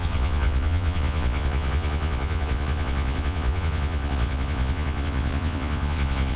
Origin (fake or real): fake